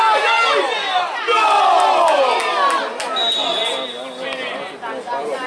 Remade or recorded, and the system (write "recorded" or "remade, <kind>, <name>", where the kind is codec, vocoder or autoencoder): recorded